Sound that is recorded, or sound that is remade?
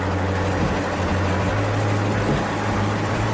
recorded